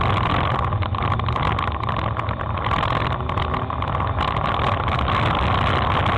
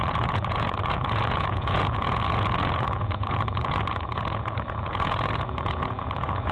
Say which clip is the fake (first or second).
second